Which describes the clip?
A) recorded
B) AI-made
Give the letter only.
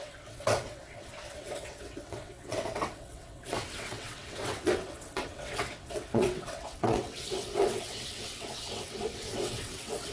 B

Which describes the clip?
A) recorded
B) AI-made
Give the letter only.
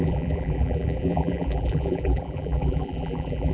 B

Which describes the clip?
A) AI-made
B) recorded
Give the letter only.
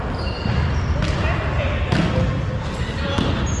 B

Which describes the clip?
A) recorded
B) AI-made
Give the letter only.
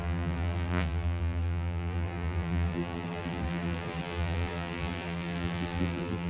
B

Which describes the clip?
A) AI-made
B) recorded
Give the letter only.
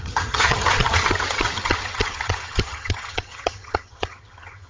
A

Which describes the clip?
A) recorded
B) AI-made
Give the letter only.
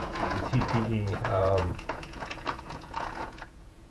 B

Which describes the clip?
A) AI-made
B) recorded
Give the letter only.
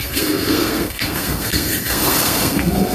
A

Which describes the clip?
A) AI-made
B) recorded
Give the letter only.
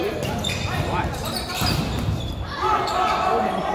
A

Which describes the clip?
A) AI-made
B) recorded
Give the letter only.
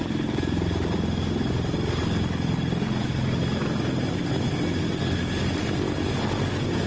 B